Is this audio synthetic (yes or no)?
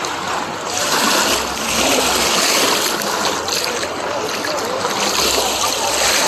no